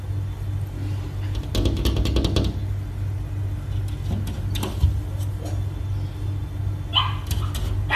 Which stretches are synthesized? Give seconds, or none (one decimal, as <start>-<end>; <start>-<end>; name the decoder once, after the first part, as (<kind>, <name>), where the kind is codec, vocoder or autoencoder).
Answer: none